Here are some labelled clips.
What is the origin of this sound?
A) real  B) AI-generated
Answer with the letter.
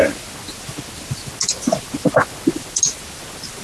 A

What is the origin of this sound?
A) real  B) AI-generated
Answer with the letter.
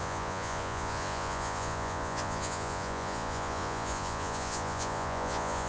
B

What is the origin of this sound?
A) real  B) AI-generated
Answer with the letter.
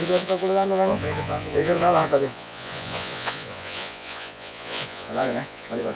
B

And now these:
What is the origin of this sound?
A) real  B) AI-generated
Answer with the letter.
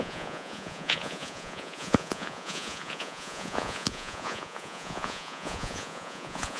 B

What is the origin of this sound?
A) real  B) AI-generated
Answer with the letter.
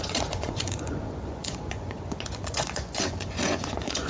B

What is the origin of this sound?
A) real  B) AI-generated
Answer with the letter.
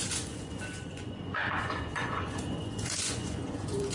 B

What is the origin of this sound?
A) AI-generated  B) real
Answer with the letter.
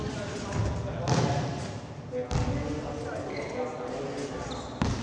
B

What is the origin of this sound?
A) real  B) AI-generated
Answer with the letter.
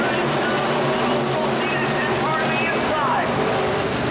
A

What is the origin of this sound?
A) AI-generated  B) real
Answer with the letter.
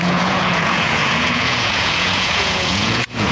A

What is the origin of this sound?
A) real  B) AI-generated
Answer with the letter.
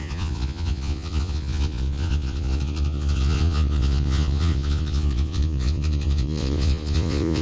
B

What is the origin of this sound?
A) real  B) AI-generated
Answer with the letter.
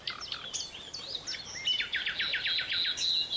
A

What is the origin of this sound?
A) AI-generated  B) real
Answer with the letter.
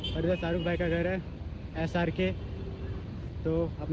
B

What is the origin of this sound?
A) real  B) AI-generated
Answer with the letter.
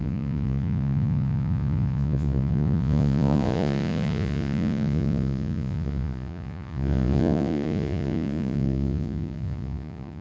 B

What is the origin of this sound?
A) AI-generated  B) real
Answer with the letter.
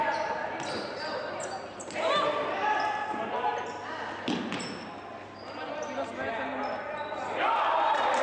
B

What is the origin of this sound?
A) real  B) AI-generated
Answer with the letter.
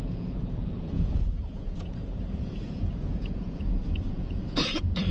B